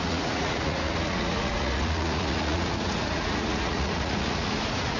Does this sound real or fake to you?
fake